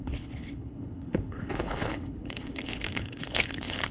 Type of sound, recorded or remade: remade